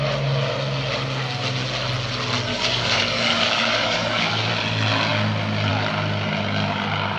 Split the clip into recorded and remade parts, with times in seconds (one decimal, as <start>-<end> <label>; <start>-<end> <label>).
0.0-2.5 recorded; 2.5-4.5 remade; 4.5-7.2 recorded